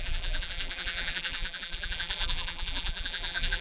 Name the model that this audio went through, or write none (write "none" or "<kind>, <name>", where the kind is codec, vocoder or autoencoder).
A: vocoder, BigVGAN v2